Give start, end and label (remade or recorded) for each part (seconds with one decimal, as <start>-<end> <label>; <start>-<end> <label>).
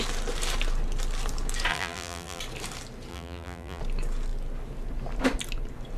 0.0-1.7 recorded; 1.7-2.4 remade; 2.4-3.1 recorded; 3.1-3.8 remade; 3.8-6.0 recorded